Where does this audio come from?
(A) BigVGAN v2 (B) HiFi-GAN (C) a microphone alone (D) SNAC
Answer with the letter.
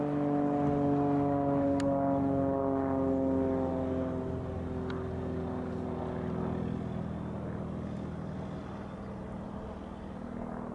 C